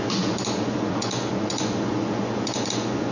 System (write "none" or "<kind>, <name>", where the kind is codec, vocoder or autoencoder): vocoder, Vocos